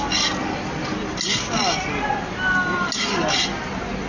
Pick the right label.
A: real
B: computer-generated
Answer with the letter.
A